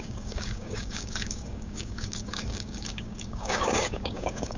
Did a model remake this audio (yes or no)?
yes